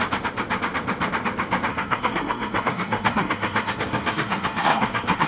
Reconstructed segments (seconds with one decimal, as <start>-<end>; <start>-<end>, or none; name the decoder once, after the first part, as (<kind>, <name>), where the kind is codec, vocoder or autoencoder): 1.7-5.3 (codec, SNAC)